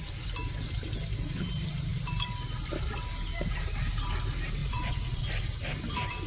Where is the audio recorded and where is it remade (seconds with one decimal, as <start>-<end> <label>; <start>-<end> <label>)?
0.0-4.6 recorded; 4.6-5.3 remade; 5.3-6.3 recorded